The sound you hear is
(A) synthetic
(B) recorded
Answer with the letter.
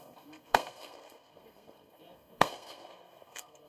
A